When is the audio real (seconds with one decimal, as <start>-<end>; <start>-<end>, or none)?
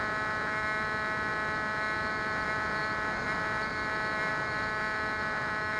0.0-5.8